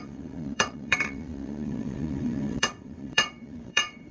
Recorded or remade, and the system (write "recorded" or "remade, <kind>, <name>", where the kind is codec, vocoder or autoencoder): remade, vocoder, WaveNeXt